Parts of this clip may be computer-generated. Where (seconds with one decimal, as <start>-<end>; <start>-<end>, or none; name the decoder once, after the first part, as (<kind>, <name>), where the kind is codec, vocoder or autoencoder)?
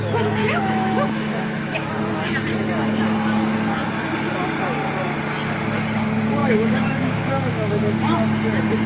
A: 0.4-1.9 (autoencoder, DAC-VAE); 6.4-7.9